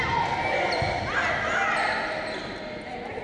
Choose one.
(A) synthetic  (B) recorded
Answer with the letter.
B